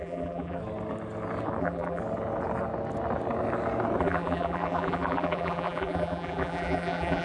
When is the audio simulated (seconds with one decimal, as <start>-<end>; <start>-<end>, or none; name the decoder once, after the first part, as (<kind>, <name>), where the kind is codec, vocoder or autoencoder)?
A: 0.0-0.6 (vocoder, BigVGAN v2); 1.6-2.0; 4.0-7.2